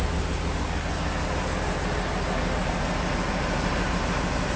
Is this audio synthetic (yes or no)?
no